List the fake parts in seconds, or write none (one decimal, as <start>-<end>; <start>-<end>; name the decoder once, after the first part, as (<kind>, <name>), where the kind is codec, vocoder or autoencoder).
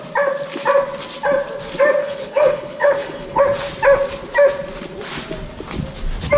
2.0-3.4 (codec, HILCodec)